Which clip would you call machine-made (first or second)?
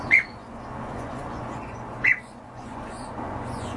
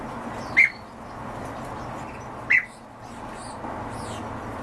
first